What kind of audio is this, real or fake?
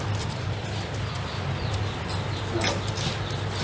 real